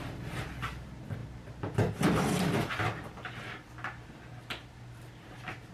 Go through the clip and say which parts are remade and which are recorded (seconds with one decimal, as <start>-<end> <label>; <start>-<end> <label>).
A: 0.0-5.7 recorded